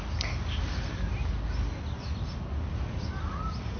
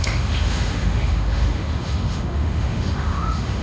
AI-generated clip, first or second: second